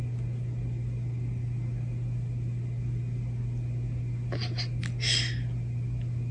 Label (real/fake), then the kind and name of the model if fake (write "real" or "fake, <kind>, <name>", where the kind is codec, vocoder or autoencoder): real